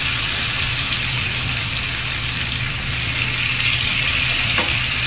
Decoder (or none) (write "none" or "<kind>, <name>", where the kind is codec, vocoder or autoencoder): vocoder, BigVGAN v2